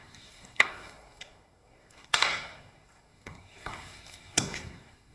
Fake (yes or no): yes